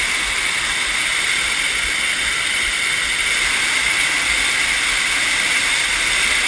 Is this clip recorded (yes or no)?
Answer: yes